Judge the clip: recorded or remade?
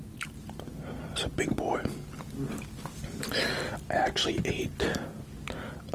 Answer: recorded